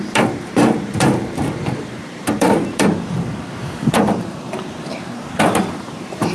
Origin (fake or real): fake